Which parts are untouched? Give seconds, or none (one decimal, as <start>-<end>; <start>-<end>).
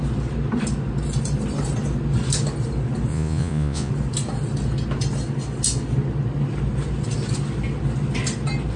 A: 0.0-3.1; 3.9-8.8